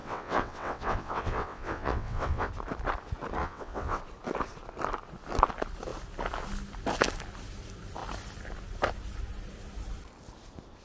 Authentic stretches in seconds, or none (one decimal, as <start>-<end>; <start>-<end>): 2.5-3.4; 4.0-10.8